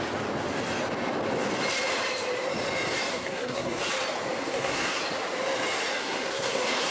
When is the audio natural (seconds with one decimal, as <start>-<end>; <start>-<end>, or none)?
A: 0.0-3.1; 3.8-4.4; 5.0-6.0